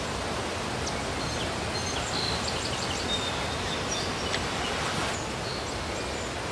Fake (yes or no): no